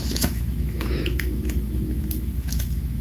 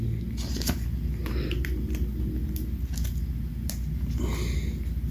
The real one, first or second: second